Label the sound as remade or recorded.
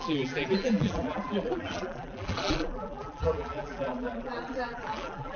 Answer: remade